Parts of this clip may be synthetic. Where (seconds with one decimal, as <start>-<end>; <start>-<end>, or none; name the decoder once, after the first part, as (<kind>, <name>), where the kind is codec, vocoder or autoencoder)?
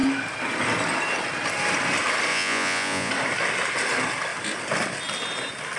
2.3-3.1 (vocoder, Vocos)